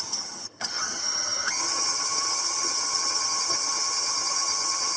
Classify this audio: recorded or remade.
remade